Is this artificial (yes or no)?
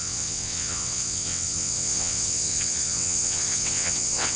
yes